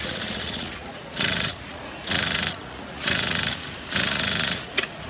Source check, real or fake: fake